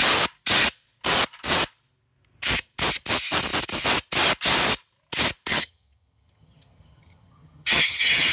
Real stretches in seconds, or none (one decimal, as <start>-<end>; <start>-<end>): 0.0-5.5